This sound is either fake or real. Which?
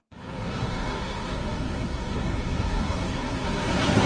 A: fake